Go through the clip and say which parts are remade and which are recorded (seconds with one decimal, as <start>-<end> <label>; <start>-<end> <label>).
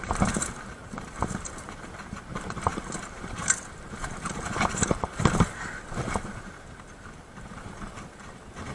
0.0-8.7 remade